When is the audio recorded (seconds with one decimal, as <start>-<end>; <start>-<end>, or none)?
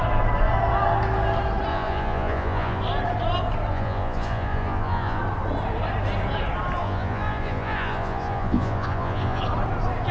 0.0-1.7; 2.8-3.7; 5.2-6.8; 9.4-10.1